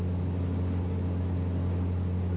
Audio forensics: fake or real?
real